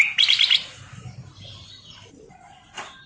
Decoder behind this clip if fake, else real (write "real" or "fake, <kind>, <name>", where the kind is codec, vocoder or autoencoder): real